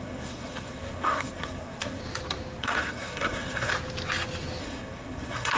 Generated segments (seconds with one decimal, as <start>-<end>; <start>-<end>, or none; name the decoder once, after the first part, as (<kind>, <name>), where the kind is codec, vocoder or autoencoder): 0.0-2.0 (codec, SNAC); 2.6-3.7; 4.6-5.6